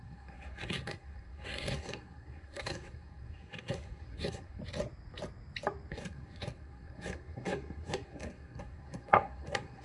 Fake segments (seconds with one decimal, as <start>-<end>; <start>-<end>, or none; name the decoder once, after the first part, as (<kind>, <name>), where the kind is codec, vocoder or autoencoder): 0.0-4.6 (codec, SNAC); 5.9-9.8